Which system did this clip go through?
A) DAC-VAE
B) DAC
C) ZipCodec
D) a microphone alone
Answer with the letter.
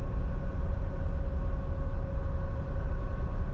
D